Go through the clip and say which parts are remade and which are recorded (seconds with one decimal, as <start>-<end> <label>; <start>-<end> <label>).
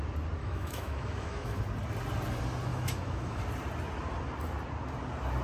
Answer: 0.0-0.4 recorded; 0.4-1.6 remade; 1.6-2.7 recorded; 2.7-3.4 remade; 3.4-5.4 recorded